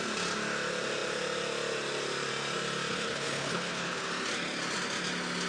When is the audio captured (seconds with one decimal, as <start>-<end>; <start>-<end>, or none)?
0.0-2.9; 4.1-5.5